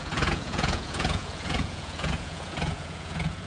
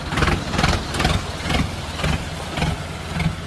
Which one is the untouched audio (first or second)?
second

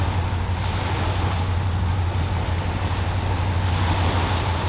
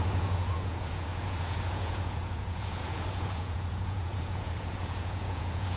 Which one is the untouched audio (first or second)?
first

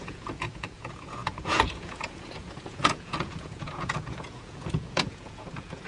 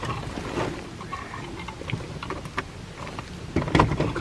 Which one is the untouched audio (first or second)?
second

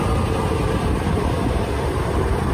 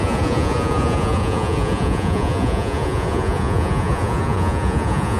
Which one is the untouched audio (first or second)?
first